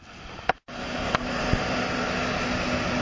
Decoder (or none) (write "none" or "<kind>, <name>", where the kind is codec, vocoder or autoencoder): none